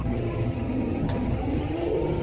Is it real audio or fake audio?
fake